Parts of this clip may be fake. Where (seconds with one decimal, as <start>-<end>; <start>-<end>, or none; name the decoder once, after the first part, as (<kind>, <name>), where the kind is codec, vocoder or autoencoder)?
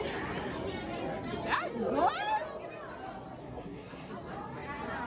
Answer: 3.4-4.1 (codec, SNAC)